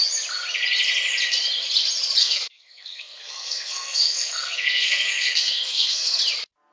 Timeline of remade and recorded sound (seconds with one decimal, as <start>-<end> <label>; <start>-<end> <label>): 0.0-2.2 recorded; 2.2-6.2 remade; 6.2-6.7 recorded